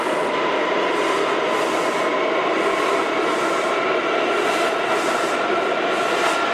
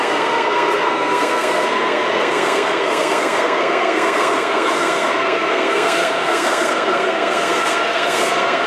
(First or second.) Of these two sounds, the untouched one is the first